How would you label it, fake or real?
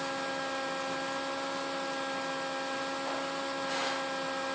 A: real